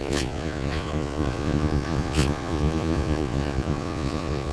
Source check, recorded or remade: remade